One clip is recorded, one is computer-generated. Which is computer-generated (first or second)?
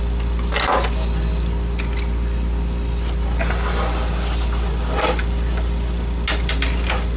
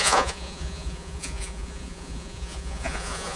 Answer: second